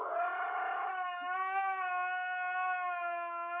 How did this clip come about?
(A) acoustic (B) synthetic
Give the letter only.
A